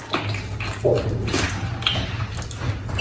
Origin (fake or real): real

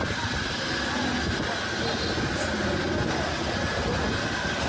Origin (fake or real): real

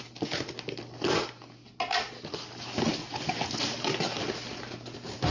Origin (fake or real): real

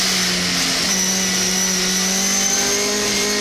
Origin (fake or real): real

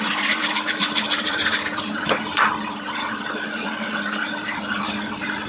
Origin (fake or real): fake